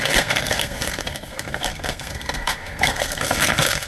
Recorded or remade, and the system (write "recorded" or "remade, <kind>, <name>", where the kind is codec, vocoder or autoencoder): remade, codec, SNAC